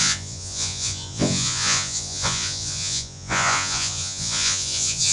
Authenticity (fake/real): fake